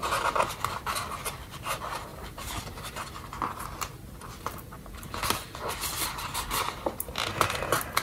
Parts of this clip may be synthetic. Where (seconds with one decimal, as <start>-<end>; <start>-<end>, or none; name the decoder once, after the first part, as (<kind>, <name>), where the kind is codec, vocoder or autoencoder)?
2.1-3.0 (vocoder, BigVGAN v2)